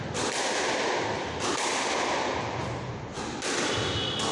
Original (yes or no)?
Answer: yes